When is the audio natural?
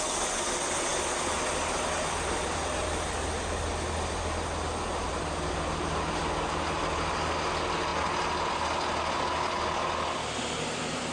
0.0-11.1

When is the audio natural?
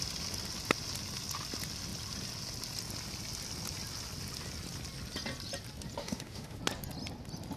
0.0-6.0; 6.6-7.6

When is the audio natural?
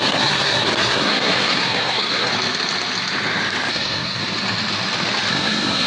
2.3-3.7; 4.2-5.3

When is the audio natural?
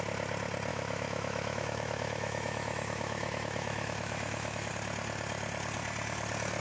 0.0-0.7; 4.7-6.6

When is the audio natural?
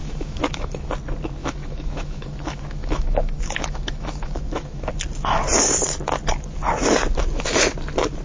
0.9-1.4; 4.9-8.2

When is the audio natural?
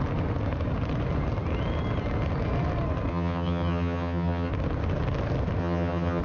0.0-3.1; 4.5-5.6